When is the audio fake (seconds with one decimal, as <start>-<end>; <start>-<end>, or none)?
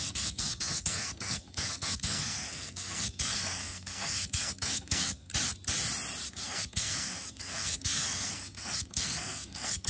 0.0-5.3; 6.3-9.9